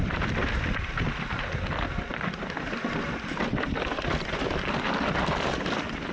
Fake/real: fake